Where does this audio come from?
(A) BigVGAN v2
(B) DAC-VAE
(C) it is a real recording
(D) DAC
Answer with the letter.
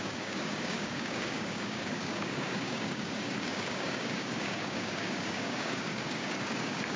D